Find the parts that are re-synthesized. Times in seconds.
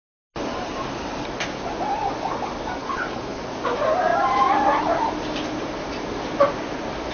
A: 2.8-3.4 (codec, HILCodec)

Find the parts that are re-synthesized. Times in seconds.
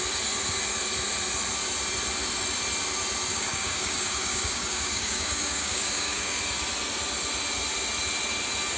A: 3.3-6.4 (codec, DAC)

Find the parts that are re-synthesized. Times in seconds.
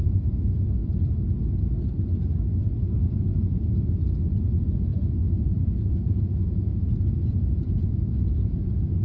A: 0.0-0.8 (vocoder, Vocos); 3.3-4.9; 5.7-9.0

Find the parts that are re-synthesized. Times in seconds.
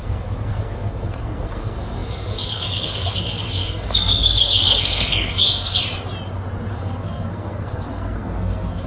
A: 0.0-5.8 (codec, SNAC); 6.7-8.9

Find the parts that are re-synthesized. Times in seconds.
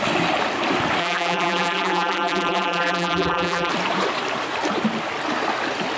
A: 1.0-3.7 (vocoder, BigVGAN v2)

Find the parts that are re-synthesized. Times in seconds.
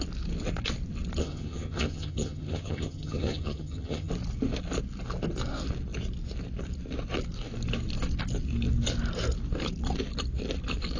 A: 1.2-4.1 (vocoder, HiFi-GAN)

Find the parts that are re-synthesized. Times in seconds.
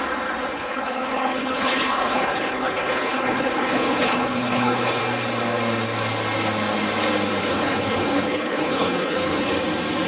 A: 0.5-5.0 (codec, HILCodec); 7.4-9.5